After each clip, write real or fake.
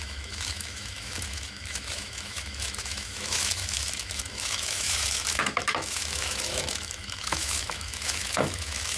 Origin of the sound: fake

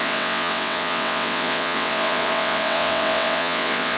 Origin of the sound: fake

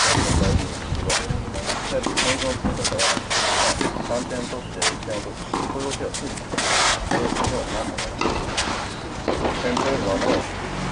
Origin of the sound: real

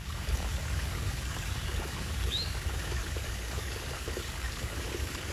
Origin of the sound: fake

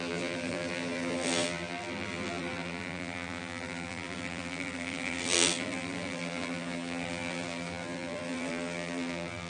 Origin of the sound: fake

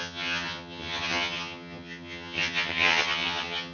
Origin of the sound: fake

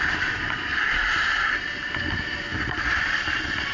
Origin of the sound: real